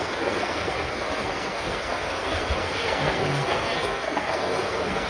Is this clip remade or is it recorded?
remade